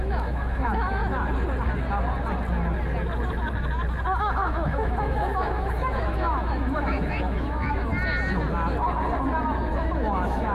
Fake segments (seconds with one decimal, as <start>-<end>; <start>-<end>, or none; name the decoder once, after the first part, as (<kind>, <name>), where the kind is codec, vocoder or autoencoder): 0.0-1.0 (autoencoder, DAC-VAE); 4.2-7.9; 9.7-10.5